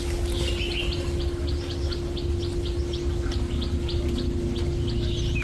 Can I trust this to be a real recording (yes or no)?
yes